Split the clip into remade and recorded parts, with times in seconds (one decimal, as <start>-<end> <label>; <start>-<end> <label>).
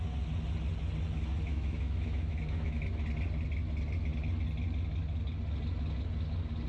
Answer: 0.0-1.5 recorded; 1.5-2.8 remade; 2.8-6.7 recorded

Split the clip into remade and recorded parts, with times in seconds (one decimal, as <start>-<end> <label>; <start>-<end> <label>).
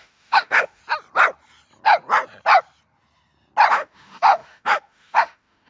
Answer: 0.0-0.8 remade; 0.8-3.7 recorded; 3.7-5.7 remade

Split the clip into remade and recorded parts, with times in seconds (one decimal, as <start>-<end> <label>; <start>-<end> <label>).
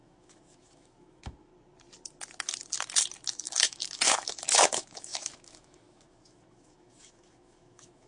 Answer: 0.0-1.5 remade; 1.5-3.3 recorded; 3.3-8.1 remade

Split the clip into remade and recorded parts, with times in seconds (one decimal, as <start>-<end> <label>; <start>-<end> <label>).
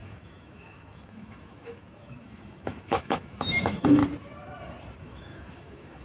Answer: 0.0-4.0 remade; 4.0-5.0 recorded; 5.0-6.0 remade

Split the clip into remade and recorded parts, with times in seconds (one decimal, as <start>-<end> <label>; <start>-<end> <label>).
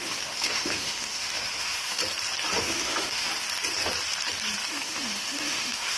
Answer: 0.0-2.0 remade; 2.0-2.6 recorded; 2.6-3.3 remade; 3.3-4.7 recorded; 4.7-6.0 remade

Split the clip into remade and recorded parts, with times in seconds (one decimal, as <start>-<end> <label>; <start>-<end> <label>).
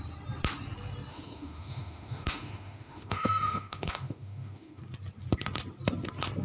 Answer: 0.0-1.1 recorded; 1.1-4.8 remade; 4.8-6.4 recorded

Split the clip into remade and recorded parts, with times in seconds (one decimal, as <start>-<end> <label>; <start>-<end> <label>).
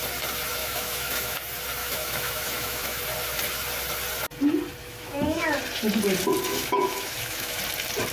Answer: 0.0-0.6 recorded; 0.6-1.4 remade; 1.4-1.8 recorded; 1.8-3.0 remade; 3.0-4.8 recorded; 4.8-5.6 remade; 5.6-6.5 recorded; 6.5-7.6 remade; 7.6-8.1 recorded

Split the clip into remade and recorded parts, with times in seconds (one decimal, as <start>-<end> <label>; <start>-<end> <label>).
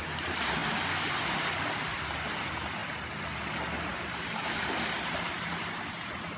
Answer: 0.0-6.4 recorded